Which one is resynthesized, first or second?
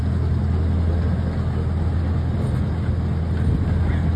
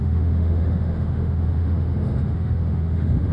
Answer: second